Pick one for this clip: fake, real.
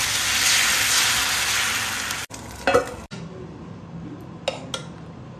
real